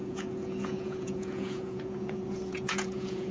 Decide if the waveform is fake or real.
fake